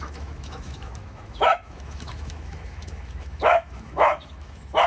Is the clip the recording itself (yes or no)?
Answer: no